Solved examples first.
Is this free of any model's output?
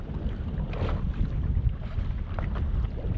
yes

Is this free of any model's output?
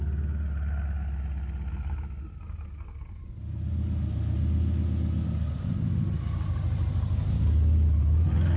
yes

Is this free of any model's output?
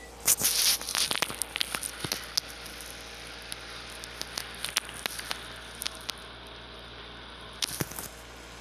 yes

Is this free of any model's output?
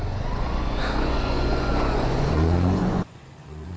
no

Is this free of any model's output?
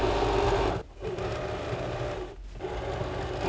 yes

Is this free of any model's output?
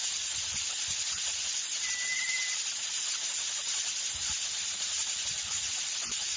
yes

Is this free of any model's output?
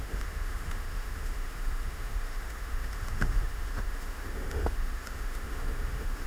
no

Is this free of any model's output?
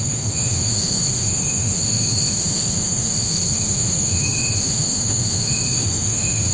no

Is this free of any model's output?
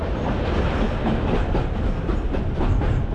yes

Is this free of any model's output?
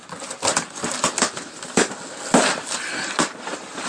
yes